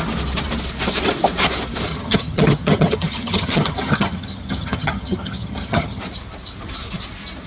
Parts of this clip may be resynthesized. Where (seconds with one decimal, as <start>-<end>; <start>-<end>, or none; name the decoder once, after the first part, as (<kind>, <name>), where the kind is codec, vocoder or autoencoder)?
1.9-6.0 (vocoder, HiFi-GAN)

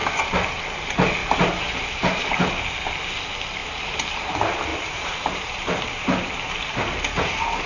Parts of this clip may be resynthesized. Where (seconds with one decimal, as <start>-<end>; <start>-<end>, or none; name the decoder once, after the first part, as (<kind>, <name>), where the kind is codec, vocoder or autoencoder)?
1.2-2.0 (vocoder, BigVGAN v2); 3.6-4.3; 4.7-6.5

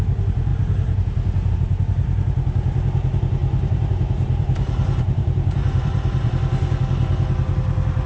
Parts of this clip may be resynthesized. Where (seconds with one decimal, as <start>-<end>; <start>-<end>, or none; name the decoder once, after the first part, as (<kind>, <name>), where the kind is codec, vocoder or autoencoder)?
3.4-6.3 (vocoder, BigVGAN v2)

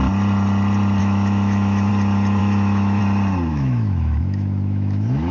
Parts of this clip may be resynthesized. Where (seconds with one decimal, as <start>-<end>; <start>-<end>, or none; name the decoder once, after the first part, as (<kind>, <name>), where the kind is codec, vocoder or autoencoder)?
1.0-1.9 (autoencoder, DAC-VAE); 2.4-3.0; 3.5-5.3

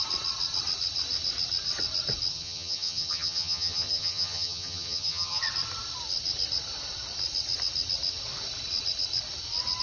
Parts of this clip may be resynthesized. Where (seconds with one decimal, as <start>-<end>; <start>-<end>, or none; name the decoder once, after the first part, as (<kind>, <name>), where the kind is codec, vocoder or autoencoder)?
2.3-5.4 (vocoder, HiFi-GAN)